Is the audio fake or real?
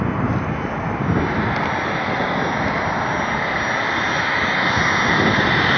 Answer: real